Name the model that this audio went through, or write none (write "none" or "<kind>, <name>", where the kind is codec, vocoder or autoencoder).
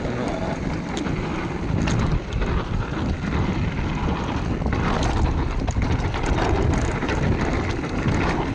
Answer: none